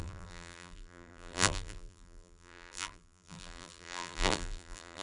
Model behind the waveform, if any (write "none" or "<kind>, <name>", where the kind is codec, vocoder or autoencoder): vocoder, BigVGAN v2